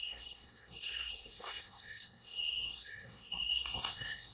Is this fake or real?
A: fake